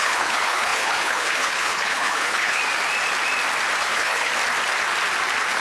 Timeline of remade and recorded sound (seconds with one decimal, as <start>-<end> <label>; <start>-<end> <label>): 0.0-2.6 remade; 2.6-3.8 recorded; 3.8-4.3 remade; 4.3-5.6 recorded